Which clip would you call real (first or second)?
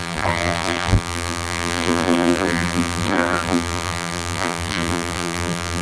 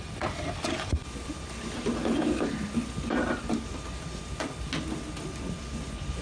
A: second